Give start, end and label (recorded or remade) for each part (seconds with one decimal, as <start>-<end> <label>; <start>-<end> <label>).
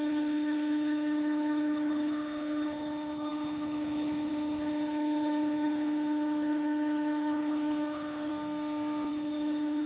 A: 0.0-8.3 remade; 8.3-9.1 recorded; 9.1-9.9 remade